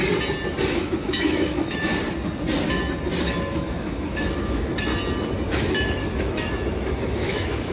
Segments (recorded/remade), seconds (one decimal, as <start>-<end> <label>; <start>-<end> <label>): 0.0-0.7 recorded; 0.7-1.9 remade; 1.9-3.2 recorded; 3.2-4.9 remade; 4.9-5.5 recorded; 5.5-7.7 remade